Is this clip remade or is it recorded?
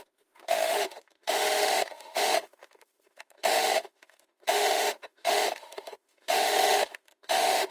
remade